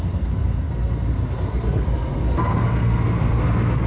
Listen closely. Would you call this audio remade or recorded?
remade